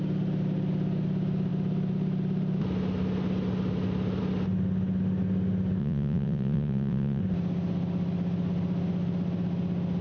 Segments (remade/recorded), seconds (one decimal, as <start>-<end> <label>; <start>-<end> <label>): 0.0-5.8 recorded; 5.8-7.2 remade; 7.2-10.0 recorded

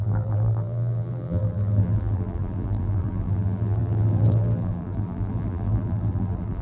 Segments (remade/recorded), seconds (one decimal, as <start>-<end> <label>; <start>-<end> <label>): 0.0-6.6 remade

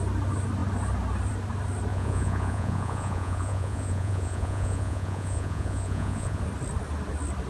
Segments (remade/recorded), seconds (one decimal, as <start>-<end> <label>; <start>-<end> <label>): 0.0-1.9 recorded; 1.9-6.4 remade; 6.4-7.5 recorded

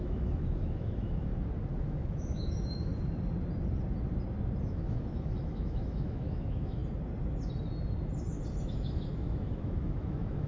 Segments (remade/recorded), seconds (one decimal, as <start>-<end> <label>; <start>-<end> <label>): 0.0-1.3 remade; 1.3-1.8 recorded; 1.8-2.9 remade; 2.9-4.6 recorded; 4.6-6.8 remade; 6.8-8.6 recorded; 8.6-10.5 remade